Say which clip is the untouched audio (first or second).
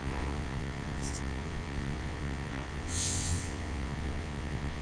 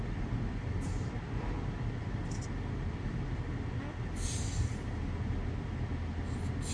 second